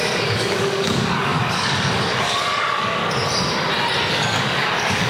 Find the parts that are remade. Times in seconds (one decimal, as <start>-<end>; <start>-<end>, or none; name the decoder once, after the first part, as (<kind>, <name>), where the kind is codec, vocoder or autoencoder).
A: 0.0-3.0 (codec, DAC); 4.1-5.1